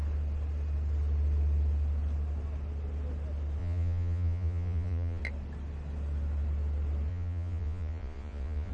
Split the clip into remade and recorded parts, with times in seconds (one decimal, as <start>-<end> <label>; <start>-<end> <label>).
0.0-3.6 recorded; 3.6-5.2 remade; 5.2-7.1 recorded; 7.1-8.7 remade